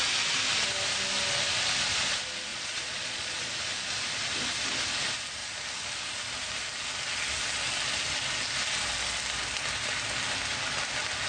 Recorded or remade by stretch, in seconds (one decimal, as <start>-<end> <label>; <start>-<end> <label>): 0.0-2.5 recorded; 2.5-3.5 remade; 3.5-11.3 recorded